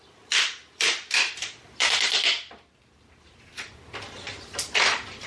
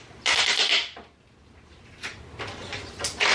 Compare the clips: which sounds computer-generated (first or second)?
first